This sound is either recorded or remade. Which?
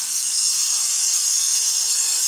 remade